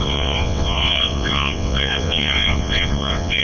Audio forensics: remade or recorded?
remade